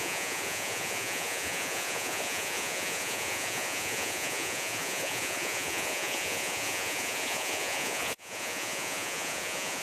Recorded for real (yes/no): no